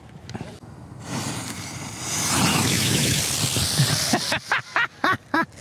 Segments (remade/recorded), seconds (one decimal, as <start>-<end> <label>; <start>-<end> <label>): 0.0-2.5 recorded; 2.5-3.2 remade; 3.2-5.6 recorded